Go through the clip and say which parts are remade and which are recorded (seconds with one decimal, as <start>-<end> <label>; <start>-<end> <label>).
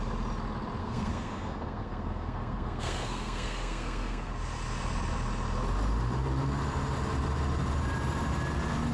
0.0-0.8 recorded; 0.8-4.3 remade; 4.3-8.9 recorded